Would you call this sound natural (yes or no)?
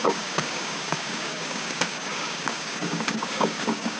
no